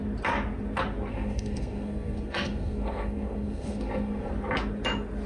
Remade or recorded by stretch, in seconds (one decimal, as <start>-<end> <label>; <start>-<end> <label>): 0.0-1.1 recorded; 1.1-4.3 remade; 4.3-5.3 recorded